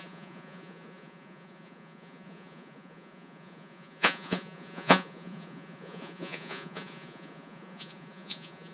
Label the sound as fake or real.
fake